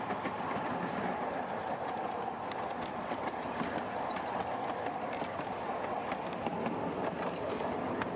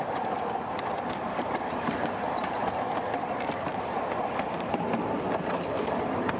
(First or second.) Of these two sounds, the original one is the first